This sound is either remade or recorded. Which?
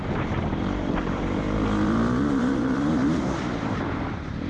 remade